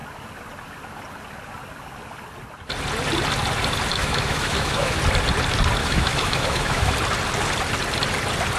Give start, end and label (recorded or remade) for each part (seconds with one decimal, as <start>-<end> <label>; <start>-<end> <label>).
0.0-3.9 recorded; 3.9-5.0 remade; 5.0-5.8 recorded; 5.8-6.9 remade; 6.9-8.6 recorded